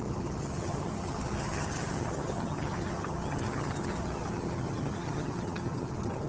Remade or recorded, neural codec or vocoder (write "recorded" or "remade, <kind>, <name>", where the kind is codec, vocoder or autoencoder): remade, vocoder, HiFi-GAN